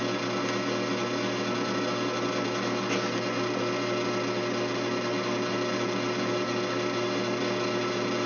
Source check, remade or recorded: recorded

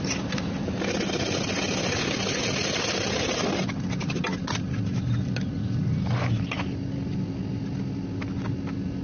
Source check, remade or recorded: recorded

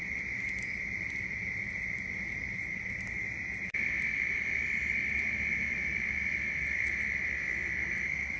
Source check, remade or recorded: recorded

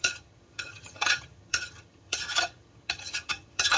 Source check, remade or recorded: remade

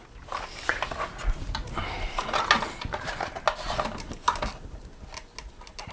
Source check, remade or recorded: recorded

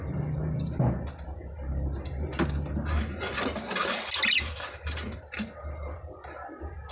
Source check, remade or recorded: recorded